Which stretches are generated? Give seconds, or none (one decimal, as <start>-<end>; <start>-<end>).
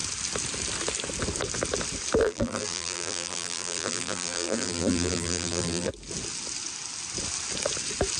2.2-5.9